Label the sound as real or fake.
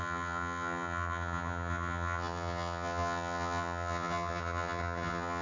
fake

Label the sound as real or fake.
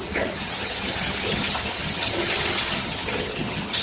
fake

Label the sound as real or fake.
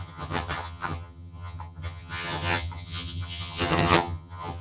fake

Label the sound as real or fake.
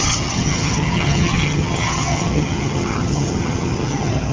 fake